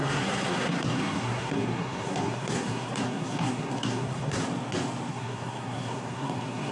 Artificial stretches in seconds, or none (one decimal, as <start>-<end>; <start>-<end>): 0.0-4.4; 5.1-6.7